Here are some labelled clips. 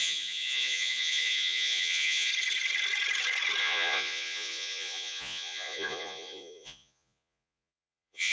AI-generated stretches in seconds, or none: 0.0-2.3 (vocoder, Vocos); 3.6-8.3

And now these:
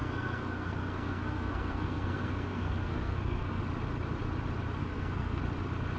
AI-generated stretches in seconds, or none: 0.0-3.6 (codec, SNAC); 4.8-5.4

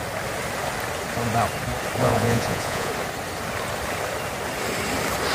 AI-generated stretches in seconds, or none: 2.0-2.9 (vocoder, Vocos)